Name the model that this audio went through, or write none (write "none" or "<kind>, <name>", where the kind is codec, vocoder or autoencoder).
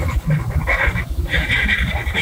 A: codec, DAC